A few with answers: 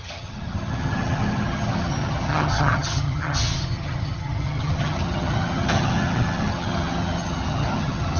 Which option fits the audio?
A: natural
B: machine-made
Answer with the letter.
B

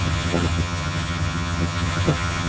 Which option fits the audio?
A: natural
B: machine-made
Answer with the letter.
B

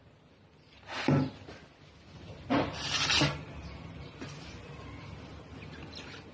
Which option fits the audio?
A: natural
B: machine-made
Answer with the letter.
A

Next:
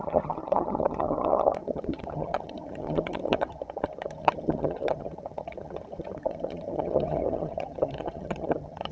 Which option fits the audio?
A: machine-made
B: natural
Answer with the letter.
A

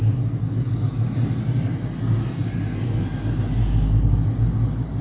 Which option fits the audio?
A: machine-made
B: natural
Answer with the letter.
B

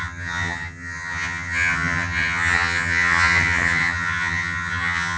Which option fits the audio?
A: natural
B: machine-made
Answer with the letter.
B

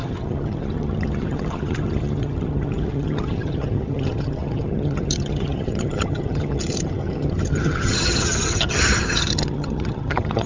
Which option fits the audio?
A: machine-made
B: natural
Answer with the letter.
A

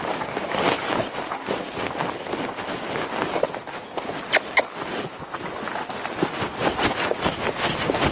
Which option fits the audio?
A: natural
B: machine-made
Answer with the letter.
A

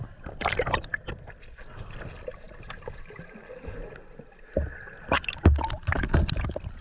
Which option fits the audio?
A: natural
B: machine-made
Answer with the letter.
A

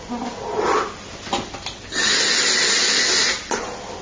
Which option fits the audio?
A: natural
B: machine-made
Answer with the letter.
A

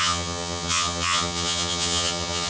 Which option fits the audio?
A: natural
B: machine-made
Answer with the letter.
B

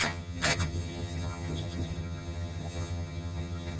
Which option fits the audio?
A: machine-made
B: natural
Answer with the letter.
A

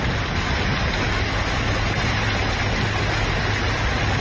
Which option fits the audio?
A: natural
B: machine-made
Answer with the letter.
A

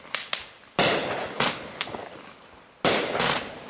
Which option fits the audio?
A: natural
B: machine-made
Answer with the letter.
A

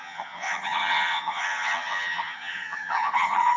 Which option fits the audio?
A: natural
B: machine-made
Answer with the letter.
B